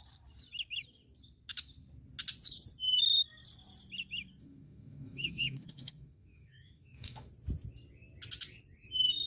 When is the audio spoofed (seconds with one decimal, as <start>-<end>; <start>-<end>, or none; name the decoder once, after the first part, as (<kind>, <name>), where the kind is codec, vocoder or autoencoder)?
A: 4.4-7.3 (autoencoder, DAC-VAE)